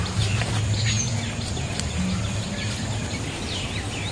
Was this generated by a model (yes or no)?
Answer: no